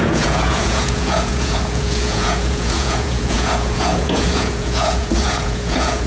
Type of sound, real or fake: fake